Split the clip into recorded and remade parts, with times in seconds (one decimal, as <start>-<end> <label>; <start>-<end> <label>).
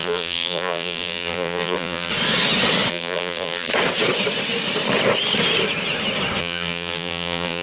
0.0-2.1 remade; 2.1-2.9 recorded; 2.9-3.7 remade; 3.7-6.4 recorded; 6.4-7.6 remade